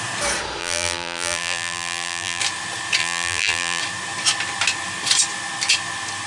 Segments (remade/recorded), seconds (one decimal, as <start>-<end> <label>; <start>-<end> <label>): 0.0-0.6 recorded; 0.6-2.4 remade; 2.4-3.0 recorded; 3.0-3.8 remade; 3.8-6.3 recorded